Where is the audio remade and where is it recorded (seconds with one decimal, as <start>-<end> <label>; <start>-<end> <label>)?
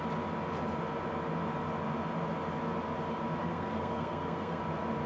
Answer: 0.0-3.4 recorded; 3.4-4.6 remade; 4.6-5.1 recorded